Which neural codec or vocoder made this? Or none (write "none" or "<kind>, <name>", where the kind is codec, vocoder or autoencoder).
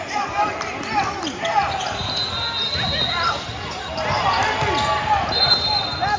none